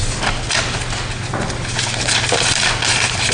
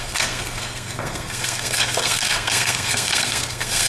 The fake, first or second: second